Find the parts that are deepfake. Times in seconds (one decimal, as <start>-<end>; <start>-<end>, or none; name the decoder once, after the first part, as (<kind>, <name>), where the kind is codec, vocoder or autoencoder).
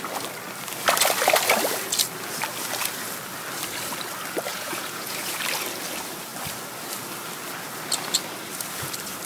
4.5-5.4 (vocoder, Vocos)